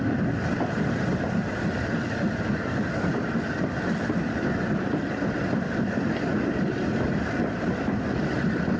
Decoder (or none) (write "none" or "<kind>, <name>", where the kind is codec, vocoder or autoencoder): none